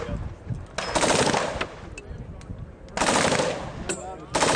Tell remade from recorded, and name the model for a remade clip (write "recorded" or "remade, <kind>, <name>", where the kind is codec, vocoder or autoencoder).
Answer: recorded